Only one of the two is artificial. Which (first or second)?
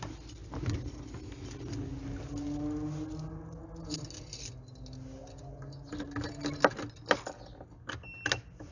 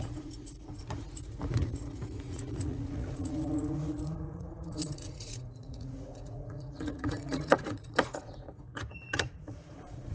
second